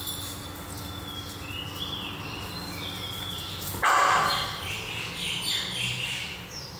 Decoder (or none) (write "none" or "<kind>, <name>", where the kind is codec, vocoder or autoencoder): none